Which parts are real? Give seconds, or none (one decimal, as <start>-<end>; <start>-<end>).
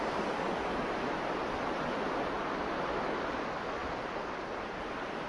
0.0-5.3